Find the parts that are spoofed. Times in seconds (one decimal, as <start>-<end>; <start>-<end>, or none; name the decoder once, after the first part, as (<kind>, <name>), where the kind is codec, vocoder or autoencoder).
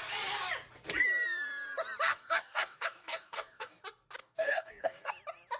2.1-3.8 (codec, DAC); 4.2-5.1